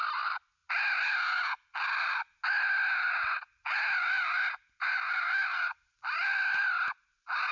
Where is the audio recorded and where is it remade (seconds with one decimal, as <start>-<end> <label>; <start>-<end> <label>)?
0.0-7.5 recorded